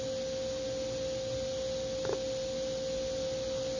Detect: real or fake real